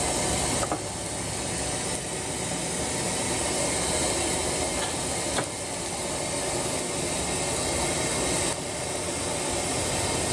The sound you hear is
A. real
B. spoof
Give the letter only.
A